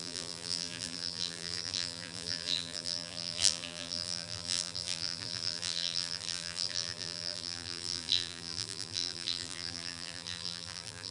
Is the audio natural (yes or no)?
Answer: no